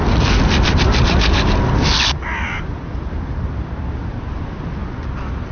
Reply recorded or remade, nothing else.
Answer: recorded